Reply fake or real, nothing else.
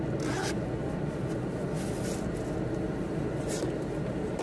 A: real